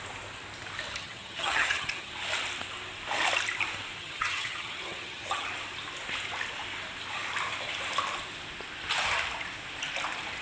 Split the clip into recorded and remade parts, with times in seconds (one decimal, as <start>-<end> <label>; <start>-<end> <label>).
0.0-1.0 recorded; 1.0-2.1 remade; 2.1-4.0 recorded; 4.0-5.5 remade; 5.5-10.4 recorded